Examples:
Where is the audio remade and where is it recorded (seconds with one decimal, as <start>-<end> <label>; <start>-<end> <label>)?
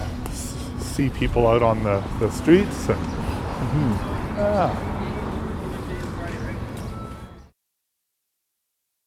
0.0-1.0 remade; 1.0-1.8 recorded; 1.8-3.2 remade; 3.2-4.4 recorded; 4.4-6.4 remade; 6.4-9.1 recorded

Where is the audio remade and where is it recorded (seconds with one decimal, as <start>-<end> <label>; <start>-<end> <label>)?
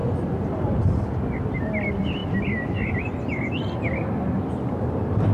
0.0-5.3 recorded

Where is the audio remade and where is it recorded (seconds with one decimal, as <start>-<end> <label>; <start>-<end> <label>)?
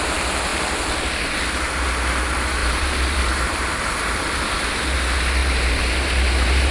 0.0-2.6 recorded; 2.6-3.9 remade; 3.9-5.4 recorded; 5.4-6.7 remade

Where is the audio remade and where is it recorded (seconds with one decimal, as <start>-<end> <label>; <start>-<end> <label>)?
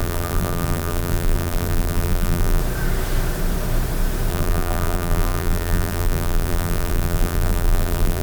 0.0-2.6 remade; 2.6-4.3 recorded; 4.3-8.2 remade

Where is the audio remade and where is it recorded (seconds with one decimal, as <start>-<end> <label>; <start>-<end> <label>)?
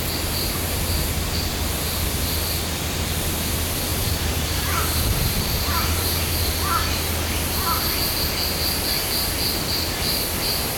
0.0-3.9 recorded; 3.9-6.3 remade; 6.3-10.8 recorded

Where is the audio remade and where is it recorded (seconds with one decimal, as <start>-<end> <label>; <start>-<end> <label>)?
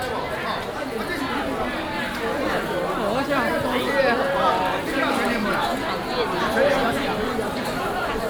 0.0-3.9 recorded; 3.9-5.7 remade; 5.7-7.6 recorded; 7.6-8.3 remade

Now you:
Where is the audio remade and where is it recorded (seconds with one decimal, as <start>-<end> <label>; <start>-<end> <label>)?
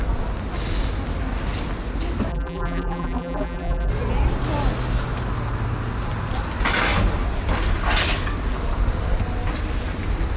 0.0-2.3 recorded; 2.3-3.9 remade; 3.9-10.4 recorded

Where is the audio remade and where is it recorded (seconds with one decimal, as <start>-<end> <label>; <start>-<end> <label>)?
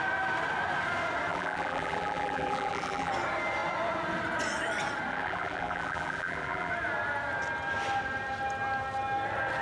0.0-1.3 recorded; 1.3-3.1 remade; 3.1-5.1 recorded; 5.1-6.7 remade; 6.7-9.6 recorded